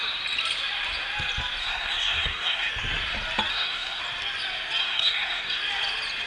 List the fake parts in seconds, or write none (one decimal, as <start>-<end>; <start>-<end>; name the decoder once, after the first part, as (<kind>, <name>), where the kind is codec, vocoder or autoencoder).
1.6-2.7 (codec, SNAC); 3.5-4.0; 4.8-5.6